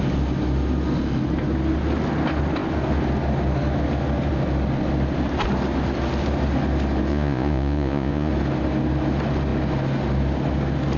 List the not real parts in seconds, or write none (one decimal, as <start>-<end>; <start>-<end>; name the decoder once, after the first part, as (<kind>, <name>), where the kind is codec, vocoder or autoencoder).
7.1-8.3 (vocoder, Vocos)